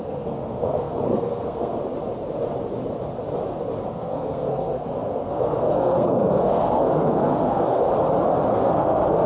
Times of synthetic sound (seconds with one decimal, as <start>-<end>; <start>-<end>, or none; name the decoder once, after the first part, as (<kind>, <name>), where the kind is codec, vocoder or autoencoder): 0.0-1.8 (codec, SNAC); 3.8-7.8; 8.5-9.3